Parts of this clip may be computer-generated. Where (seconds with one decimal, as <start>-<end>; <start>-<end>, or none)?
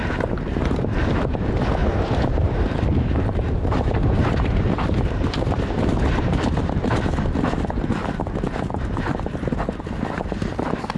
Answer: 0.0-1.4; 1.8-7.0